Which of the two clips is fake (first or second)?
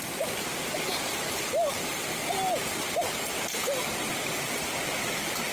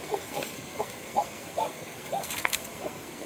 second